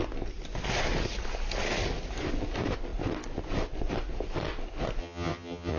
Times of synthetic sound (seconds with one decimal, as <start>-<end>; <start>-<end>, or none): 5.0-5.8